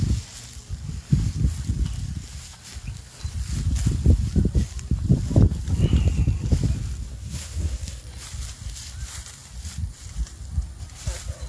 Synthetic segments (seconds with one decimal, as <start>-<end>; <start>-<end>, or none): 7.1-7.8